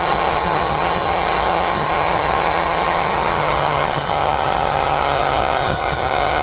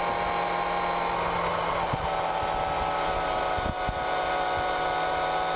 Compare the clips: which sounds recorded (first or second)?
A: second